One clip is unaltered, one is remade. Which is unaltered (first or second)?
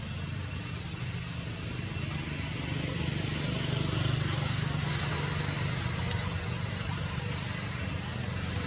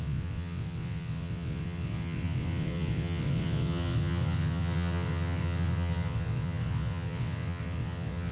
first